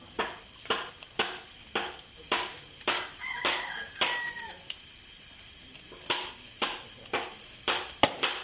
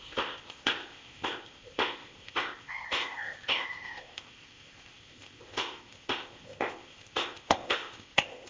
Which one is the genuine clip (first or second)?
first